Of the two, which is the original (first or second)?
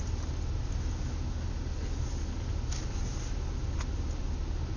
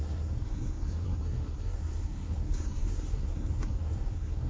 first